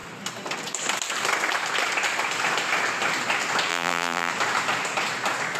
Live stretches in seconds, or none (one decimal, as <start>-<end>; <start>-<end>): 0.0-3.7; 4.3-5.6